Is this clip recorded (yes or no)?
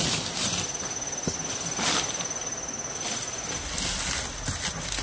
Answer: yes